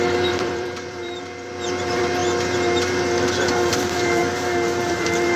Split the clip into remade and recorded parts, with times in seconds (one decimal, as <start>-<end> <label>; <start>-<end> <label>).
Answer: 0.0-2.2 remade; 2.2-3.5 recorded; 3.5-4.2 remade; 4.2-4.9 recorded; 4.9-5.4 remade